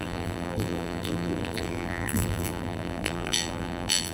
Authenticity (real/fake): fake